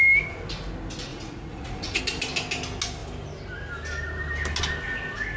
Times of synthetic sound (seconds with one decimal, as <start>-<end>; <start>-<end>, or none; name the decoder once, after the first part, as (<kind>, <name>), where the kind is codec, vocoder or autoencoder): 1.1-2.0 (vocoder, Vocos)